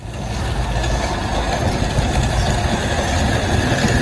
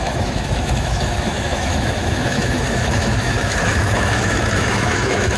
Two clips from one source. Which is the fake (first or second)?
second